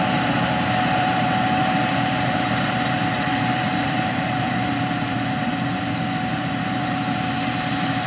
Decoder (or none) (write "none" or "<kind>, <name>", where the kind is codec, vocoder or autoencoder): vocoder, BigVGAN v2